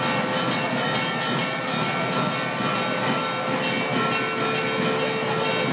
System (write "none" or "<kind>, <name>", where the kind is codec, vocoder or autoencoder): none